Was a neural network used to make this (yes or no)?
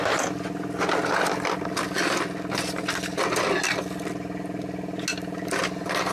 no